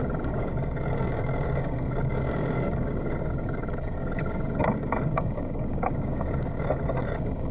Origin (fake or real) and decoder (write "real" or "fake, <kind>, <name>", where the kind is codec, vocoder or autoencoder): fake, codec, DAC